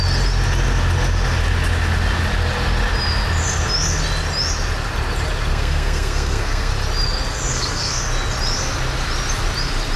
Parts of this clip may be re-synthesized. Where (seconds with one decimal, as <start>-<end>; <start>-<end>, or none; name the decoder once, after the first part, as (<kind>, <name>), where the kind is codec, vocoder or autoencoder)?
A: 5.5-6.7 (codec, SNAC); 7.5-8.0